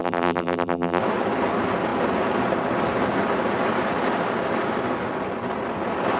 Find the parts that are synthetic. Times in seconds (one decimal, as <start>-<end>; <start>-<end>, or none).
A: 0.0-1.0